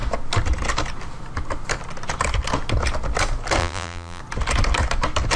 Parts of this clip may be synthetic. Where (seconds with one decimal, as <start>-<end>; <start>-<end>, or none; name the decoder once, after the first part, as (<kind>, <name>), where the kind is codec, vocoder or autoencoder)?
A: 3.6-4.2 (vocoder, BigVGAN v2)